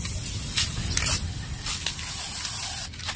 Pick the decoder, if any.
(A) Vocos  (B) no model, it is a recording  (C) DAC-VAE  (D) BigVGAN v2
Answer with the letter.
B